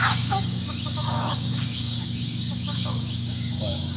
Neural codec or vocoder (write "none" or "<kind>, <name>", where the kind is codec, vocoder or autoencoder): codec, DAC